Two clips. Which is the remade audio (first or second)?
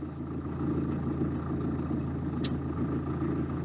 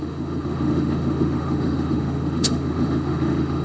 second